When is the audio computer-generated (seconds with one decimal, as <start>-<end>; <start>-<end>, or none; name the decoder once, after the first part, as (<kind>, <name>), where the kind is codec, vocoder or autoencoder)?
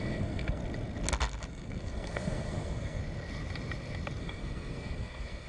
0.0-0.6 (codec, SNAC); 1.5-3.0; 4.2-5.5